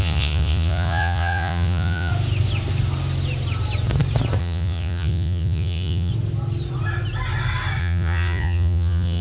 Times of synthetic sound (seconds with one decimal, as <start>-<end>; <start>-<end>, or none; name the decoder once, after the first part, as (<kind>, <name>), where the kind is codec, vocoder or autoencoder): 0.0-2.1 (vocoder, Vocos); 4.4-6.1; 7.8-9.2